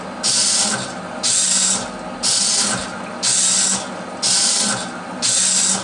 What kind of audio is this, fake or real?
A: real